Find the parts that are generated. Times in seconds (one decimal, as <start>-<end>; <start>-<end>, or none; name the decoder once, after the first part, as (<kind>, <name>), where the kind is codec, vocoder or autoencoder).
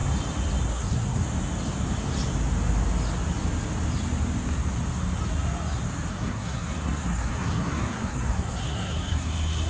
0.7-1.2 (codec, SNAC); 6.1-9.7